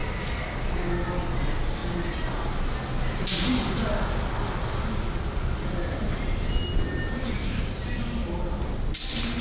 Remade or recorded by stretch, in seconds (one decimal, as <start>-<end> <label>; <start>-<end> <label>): 0.0-9.4 recorded